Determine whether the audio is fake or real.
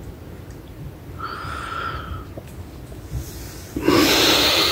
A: real